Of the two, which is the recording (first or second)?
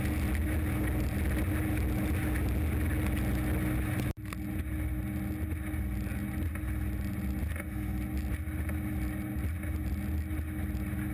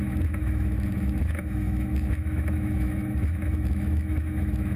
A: first